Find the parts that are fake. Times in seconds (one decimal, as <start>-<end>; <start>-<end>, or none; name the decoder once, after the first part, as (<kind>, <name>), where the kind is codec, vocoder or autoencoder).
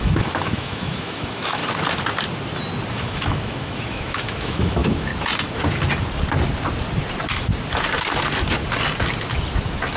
0.0-1.6 (autoencoder, DAC-VAE); 2.9-5.1